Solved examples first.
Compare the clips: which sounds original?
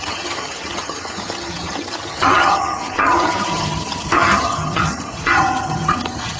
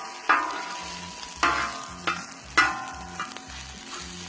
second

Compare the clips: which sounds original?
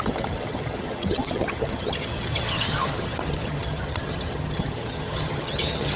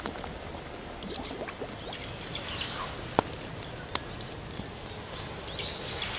second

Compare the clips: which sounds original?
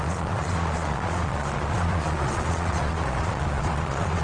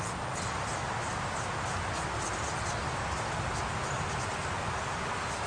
second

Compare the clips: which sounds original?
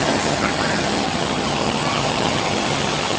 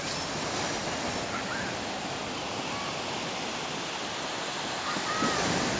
second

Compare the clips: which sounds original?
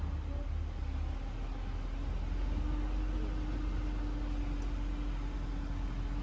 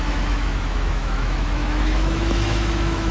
first